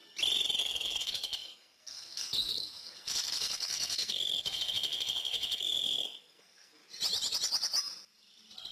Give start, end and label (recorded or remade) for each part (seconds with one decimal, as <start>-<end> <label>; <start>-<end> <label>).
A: 0.0-0.6 recorded; 0.6-6.8 remade; 6.8-8.7 recorded